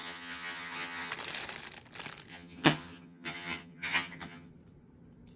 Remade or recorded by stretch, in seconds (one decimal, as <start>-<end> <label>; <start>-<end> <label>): 0.0-1.1 remade; 1.1-2.3 recorded; 2.3-4.5 remade; 4.5-5.4 recorded